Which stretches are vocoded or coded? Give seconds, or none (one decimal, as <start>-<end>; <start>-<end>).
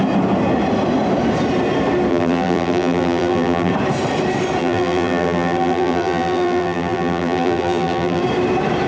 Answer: 2.1-3.7; 4.6-8.2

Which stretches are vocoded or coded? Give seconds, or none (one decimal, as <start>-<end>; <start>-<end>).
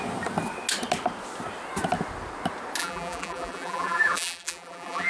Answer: 2.8-5.1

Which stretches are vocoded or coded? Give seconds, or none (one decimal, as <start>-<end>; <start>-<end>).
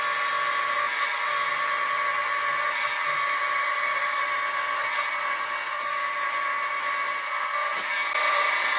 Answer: 3.6-4.2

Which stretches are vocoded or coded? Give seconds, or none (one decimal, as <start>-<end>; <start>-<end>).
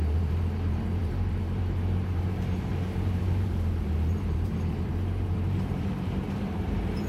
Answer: 0.0-7.1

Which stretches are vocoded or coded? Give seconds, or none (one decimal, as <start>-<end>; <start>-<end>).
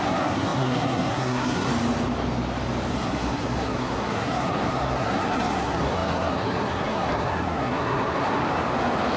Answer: 0.0-1.7; 2.9-8.4